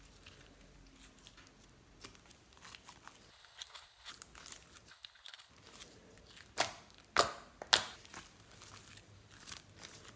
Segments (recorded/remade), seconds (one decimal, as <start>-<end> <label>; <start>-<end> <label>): 0.0-3.3 recorded; 3.3-4.1 remade; 4.1-4.9 recorded; 4.9-5.5 remade; 5.5-10.2 recorded